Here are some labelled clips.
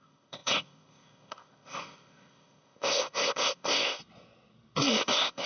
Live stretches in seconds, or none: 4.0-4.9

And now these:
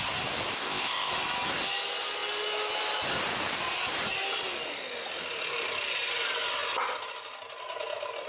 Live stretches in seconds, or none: 0.0-0.5; 1.1-8.3

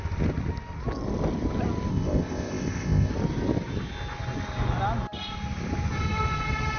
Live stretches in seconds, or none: 0.0-1.9; 3.1-6.8

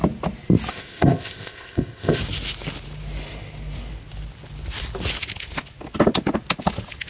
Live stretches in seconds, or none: 0.0-0.7; 2.2-7.1

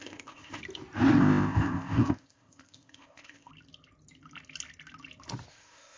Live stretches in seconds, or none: 0.6-1.2; 3.5-5.5